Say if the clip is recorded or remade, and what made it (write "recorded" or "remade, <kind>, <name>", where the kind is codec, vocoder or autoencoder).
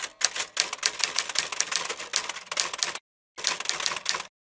recorded